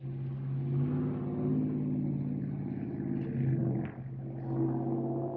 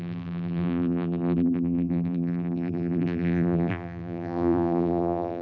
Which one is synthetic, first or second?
second